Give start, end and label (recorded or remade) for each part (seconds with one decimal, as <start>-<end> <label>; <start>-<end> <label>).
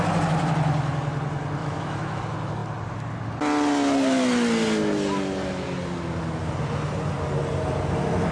0.0-1.6 recorded; 1.6-2.2 remade; 2.2-8.3 recorded